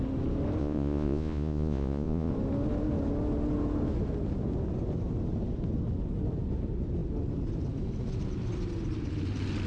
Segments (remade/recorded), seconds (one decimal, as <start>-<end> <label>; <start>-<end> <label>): 0.0-0.6 recorded; 0.6-2.3 remade; 2.3-9.7 recorded

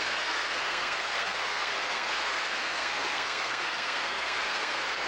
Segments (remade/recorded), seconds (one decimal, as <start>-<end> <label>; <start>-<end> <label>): 0.0-5.1 remade

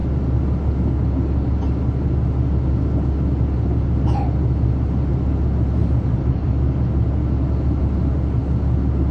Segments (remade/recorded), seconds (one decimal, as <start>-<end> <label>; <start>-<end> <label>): 0.0-5.8 recorded; 5.8-6.6 remade; 6.6-9.1 recorded

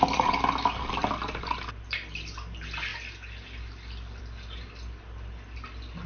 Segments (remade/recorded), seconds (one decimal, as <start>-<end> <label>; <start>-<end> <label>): 0.0-6.1 recorded

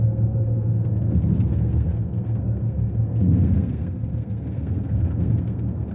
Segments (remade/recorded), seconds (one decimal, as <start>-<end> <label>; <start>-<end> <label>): 0.0-5.9 remade